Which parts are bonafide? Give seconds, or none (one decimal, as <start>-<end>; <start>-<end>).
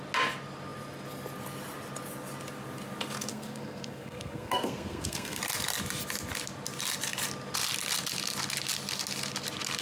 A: 0.0-3.3; 5.4-9.8